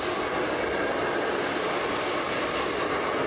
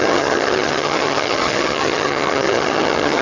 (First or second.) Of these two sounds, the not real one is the second